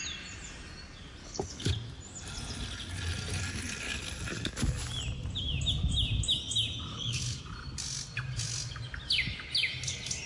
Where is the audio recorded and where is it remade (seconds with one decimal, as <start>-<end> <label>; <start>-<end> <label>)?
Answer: 0.0-1.2 recorded; 1.2-1.7 remade; 1.7-6.9 recorded; 6.9-7.4 remade; 7.4-10.3 recorded